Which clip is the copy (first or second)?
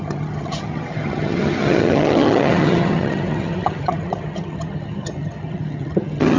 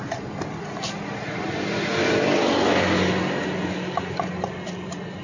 first